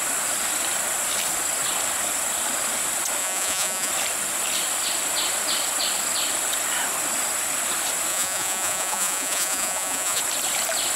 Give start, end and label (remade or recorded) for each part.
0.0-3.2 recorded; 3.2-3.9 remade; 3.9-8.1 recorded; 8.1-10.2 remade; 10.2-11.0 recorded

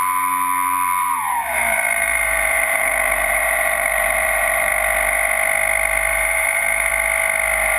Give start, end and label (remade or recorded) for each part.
0.0-1.0 recorded; 1.0-4.7 remade; 4.7-6.1 recorded; 6.1-6.9 remade; 6.9-7.8 recorded

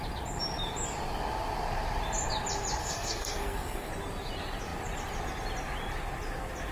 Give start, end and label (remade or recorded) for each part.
0.0-2.8 recorded; 2.8-3.9 remade; 3.9-6.7 recorded